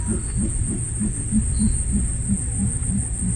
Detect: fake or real real